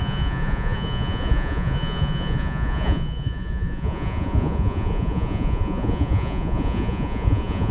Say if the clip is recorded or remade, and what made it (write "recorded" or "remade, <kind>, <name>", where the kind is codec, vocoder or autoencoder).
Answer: remade, vocoder, Vocos